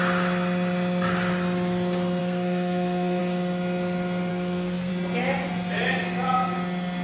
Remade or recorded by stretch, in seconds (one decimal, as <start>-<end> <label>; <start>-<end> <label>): 0.0-2.2 recorded; 2.2-3.2 remade; 3.2-4.3 recorded; 4.3-4.9 remade; 4.9-7.0 recorded